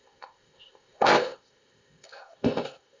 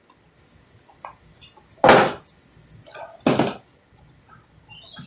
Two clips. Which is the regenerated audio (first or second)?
first